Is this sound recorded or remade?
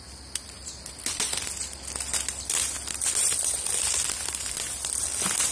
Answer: recorded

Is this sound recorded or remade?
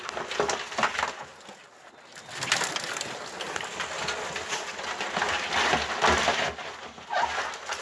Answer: recorded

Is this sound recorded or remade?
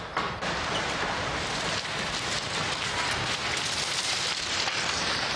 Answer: remade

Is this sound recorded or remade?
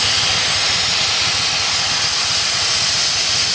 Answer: recorded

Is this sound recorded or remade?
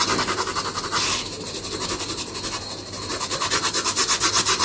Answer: recorded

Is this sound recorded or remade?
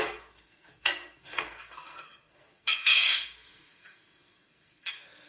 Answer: remade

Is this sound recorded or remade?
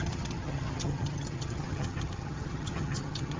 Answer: remade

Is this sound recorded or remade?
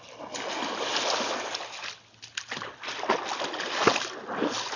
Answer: recorded